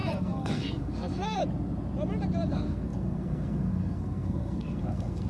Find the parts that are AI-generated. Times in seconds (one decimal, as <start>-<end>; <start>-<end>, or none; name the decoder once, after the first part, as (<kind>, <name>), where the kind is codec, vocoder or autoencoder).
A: 0.0-1.4 (codec, SNAC); 2.5-5.3